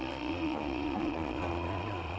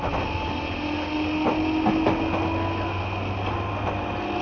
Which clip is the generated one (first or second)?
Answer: first